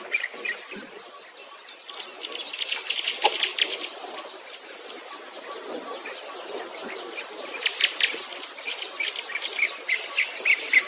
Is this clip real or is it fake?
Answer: real